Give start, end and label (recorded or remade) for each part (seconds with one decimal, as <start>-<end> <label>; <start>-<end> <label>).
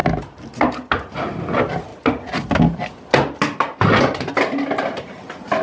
0.0-5.6 recorded